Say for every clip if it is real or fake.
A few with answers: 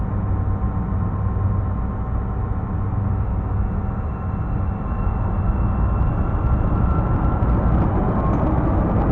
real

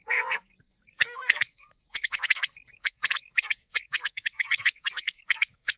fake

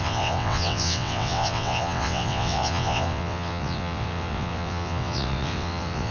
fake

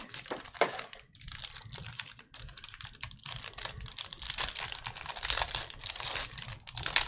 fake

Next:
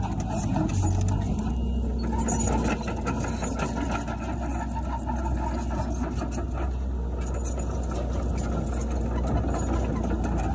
real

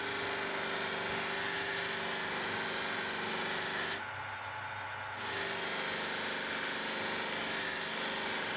real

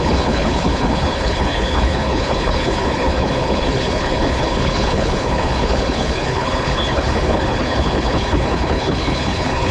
fake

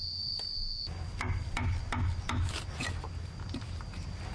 real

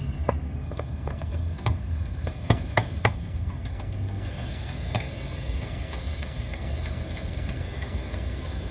fake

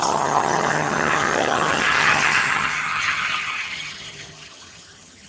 fake